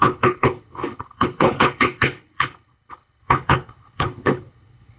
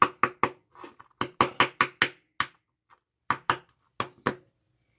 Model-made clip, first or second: first